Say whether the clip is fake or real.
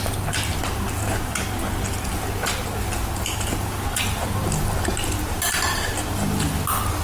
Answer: real